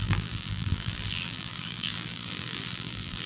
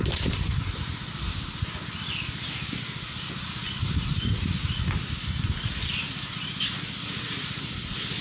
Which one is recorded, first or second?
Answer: second